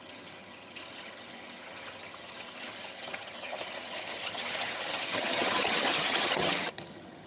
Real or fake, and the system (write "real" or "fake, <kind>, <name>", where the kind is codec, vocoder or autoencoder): fake, vocoder, HiFi-GAN